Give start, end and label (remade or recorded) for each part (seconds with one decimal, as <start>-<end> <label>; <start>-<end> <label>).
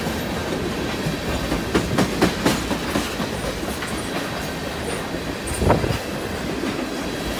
0.0-7.4 recorded